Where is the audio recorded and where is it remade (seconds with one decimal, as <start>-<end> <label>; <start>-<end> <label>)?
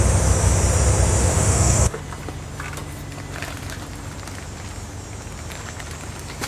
0.0-1.2 recorded; 1.2-2.0 remade; 2.0-6.5 recorded